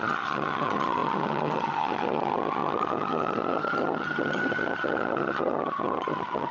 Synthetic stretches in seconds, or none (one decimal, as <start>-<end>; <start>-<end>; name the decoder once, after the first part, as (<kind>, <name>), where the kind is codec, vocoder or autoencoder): 0.0-6.5 (vocoder, HiFi-GAN)